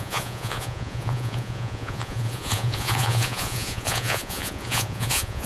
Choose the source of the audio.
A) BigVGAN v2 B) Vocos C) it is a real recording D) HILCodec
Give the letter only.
B